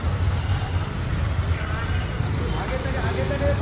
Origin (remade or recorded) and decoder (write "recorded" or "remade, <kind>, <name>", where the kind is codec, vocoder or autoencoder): recorded